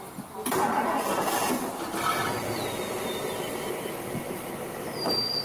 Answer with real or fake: real